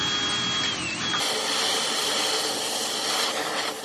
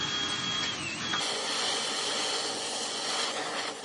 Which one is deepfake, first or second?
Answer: second